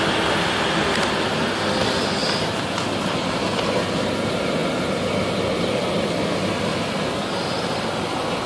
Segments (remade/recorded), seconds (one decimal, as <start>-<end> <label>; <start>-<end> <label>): 0.0-2.2 recorded; 2.2-3.0 remade; 3.0-8.5 recorded